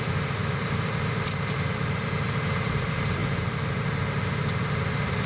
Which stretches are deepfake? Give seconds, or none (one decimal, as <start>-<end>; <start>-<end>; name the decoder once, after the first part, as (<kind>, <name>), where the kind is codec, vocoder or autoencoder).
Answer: 0.0-3.2 (vocoder, BigVGAN v2); 4.1-5.3